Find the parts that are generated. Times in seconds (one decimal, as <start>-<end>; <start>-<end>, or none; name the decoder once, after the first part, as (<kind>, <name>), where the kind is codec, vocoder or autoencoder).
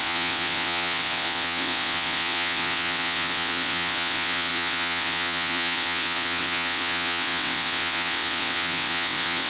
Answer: 0.0-9.5 (vocoder, WaveNeXt)